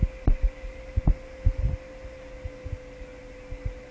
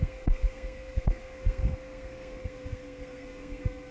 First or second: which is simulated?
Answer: second